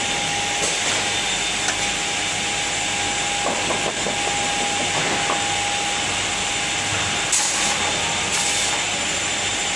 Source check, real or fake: real